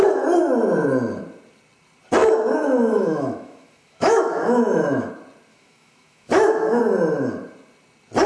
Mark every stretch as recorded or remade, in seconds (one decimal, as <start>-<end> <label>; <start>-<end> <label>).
0.0-2.2 recorded; 2.2-5.1 remade; 5.1-5.5 recorded; 5.5-6.8 remade; 6.8-8.3 recorded